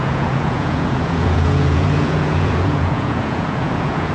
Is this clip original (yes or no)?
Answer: no